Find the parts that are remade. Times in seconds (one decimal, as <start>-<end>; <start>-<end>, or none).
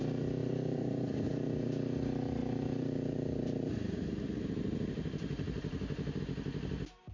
0.4-1.3; 2.4-6.2